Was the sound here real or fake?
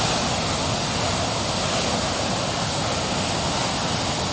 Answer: real